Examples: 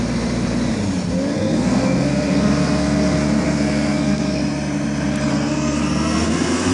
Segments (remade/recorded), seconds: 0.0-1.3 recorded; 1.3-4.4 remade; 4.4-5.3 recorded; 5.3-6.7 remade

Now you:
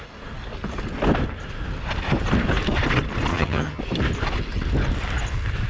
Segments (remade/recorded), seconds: 0.0-3.3 recorded; 3.3-3.8 remade; 3.8-5.7 recorded

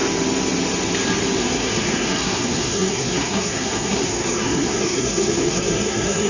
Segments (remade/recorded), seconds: 0.0-1.4 recorded; 1.4-6.3 remade

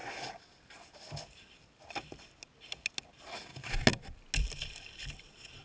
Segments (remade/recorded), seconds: 0.0-5.6 recorded